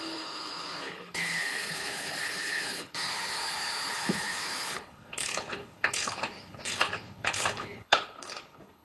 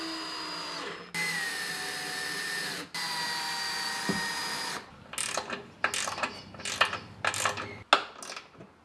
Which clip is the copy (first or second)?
first